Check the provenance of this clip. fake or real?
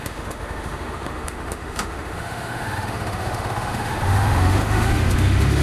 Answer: fake